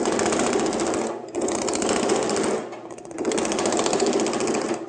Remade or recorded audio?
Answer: recorded